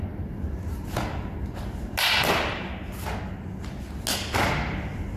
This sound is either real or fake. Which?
real